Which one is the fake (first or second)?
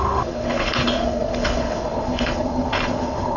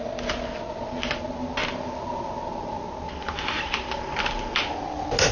first